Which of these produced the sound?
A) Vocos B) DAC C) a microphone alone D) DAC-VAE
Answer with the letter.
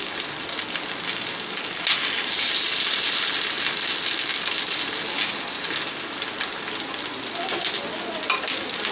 C